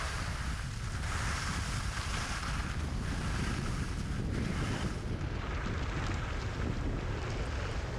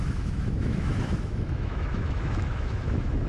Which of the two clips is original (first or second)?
first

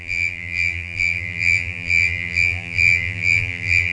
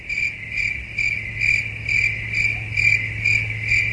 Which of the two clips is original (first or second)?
second